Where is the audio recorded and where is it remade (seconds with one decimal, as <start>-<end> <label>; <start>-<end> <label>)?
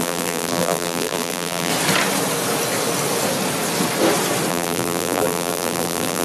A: 0.0-1.7 remade; 1.7-4.5 recorded; 4.5-6.2 remade